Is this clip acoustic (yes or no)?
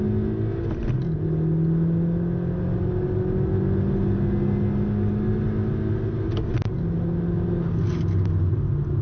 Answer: yes